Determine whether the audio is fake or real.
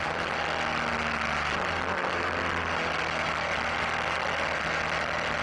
real